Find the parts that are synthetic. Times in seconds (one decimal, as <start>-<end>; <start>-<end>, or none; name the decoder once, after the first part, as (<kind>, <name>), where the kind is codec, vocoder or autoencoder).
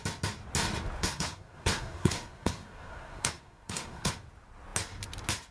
1.0-4.1 (codec, SNAC)